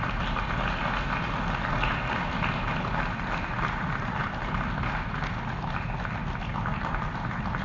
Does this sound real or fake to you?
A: real